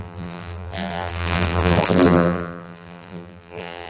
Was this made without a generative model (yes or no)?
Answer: no